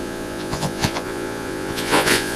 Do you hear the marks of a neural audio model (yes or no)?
yes